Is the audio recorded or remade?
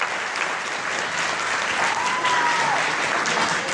recorded